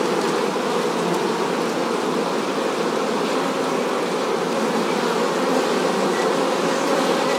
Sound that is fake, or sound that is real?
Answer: real